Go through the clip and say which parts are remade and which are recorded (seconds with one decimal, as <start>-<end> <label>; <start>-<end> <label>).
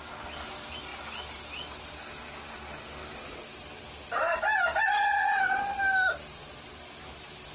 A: 0.0-5.2 recorded; 5.2-5.8 remade; 5.8-7.5 recorded